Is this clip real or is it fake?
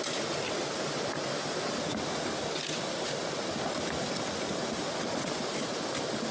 real